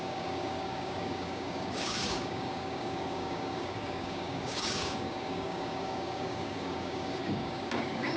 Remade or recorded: remade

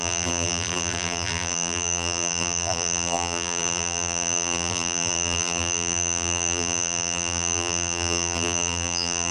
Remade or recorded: remade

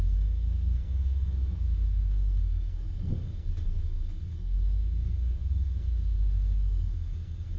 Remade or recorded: remade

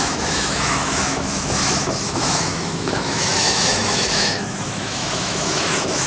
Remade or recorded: remade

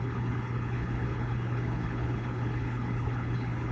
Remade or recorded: remade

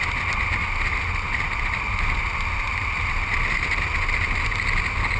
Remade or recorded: recorded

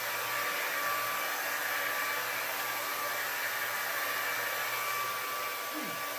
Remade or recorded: recorded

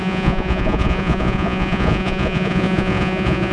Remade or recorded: remade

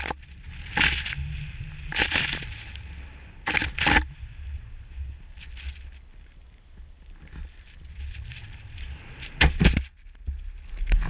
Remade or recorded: recorded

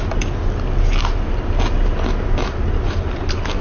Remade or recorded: recorded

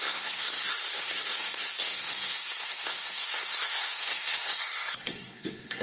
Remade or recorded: remade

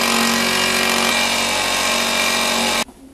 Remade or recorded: recorded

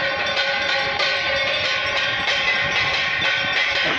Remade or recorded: remade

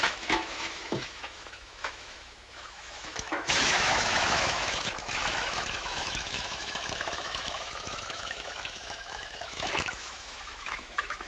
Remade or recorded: remade